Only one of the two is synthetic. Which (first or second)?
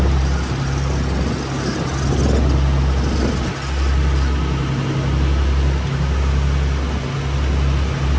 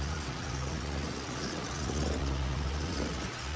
second